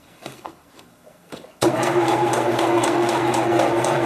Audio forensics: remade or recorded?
remade